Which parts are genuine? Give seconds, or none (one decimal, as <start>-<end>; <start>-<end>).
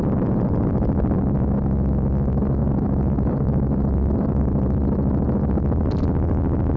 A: 0.0-2.6; 4.4-6.8